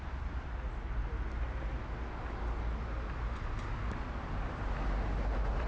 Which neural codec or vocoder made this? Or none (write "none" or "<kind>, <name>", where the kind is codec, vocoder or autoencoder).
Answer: none